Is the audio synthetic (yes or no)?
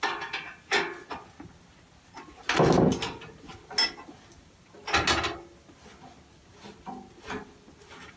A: no